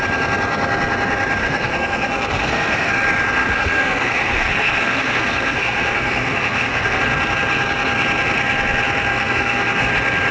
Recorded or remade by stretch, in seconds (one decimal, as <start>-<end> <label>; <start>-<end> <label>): 0.0-1.4 recorded; 1.4-2.9 remade; 2.9-3.4 recorded; 3.4-7.0 remade; 7.0-9.1 recorded; 9.1-9.9 remade; 9.9-10.3 recorded